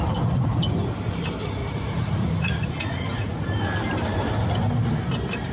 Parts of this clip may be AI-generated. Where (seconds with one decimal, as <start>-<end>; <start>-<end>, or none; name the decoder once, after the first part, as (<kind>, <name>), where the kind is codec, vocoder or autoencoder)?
1.6-3.4 (vocoder, Vocos)